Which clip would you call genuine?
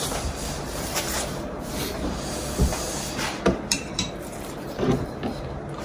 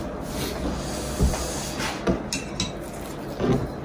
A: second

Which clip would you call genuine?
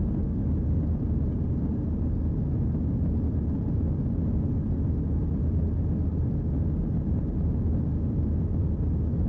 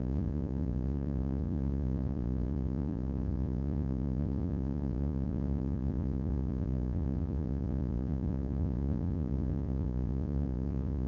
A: first